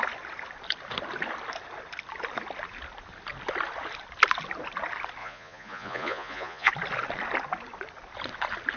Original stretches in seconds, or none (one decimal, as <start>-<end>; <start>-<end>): 0.0-5.2; 6.7-8.8